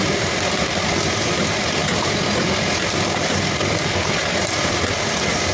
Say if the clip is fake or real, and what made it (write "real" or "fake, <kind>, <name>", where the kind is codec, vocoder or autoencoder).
real